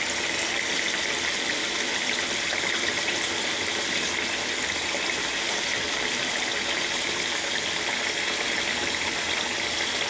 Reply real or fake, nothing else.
real